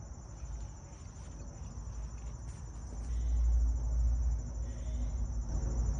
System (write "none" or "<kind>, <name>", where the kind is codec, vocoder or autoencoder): none